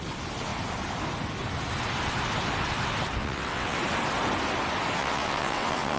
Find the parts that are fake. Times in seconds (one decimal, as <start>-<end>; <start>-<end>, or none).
3.2-3.8; 5.0-6.0